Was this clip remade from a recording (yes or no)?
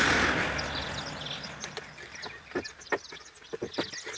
no